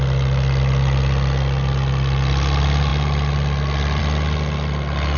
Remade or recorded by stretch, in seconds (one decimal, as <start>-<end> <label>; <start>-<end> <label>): 0.0-5.2 recorded